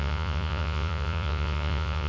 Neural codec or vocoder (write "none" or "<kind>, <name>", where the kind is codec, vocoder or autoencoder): vocoder, Vocos